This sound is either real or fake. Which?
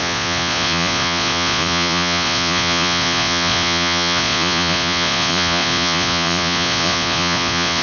fake